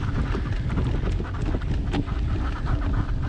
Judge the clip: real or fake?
real